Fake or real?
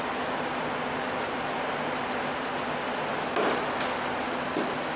real